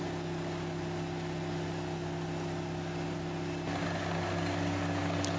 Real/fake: real